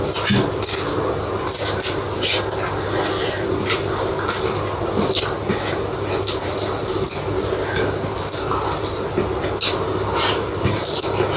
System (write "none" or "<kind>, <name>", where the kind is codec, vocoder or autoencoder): none